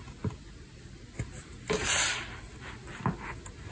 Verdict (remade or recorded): recorded